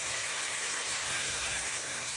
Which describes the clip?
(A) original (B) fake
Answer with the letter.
B